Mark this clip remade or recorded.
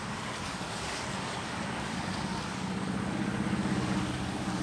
remade